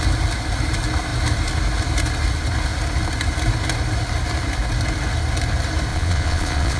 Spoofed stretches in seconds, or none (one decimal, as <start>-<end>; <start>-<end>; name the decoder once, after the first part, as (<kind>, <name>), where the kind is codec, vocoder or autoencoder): 5.9-6.8 (vocoder, Vocos)